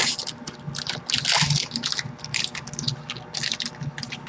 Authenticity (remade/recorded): recorded